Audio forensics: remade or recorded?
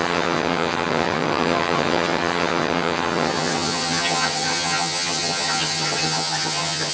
remade